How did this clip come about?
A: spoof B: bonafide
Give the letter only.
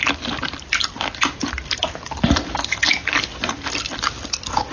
A